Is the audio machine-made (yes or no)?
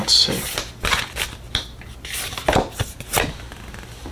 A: no